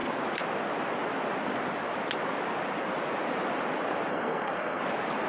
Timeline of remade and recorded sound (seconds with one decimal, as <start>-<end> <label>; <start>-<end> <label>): 0.0-4.1 recorded; 4.1-4.8 remade; 4.8-5.3 recorded